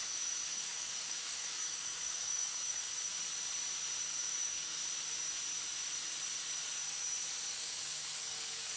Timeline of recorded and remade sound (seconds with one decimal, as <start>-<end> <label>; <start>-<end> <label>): 0.0-3.1 remade; 3.1-4.1 recorded; 4.1-4.8 remade; 4.8-7.5 recorded; 7.5-8.8 remade